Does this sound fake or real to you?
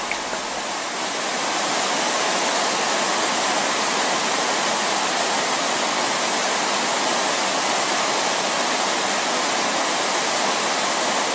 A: real